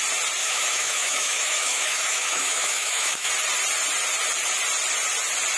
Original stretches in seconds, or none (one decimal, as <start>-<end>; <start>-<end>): 0.0-0.4; 3.3-5.6